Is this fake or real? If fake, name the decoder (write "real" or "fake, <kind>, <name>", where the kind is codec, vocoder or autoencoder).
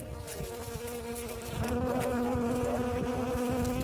real